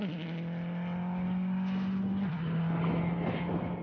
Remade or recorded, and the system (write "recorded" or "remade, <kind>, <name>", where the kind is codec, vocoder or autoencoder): recorded